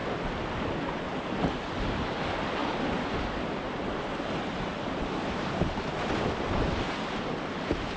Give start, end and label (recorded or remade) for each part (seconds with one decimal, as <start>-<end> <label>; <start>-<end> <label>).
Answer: 0.0-0.7 remade; 0.7-2.6 recorded; 2.6-7.3 remade; 7.3-8.0 recorded